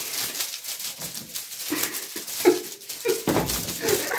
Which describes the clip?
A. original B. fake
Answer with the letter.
A